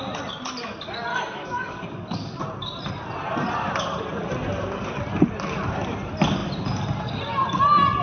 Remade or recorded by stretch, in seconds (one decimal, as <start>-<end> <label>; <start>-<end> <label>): 0.0-1.1 recorded; 1.1-2.4 remade; 2.4-8.0 recorded